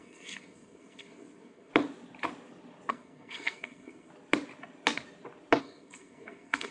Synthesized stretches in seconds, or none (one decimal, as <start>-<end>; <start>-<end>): 0.0-1.7; 2.9-4.1; 5.6-6.7